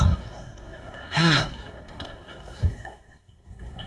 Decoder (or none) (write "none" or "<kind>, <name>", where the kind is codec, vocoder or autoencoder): codec, SNAC